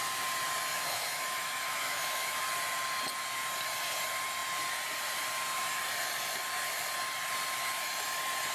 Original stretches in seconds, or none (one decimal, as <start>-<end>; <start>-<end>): 0.0-0.7; 2.4-8.5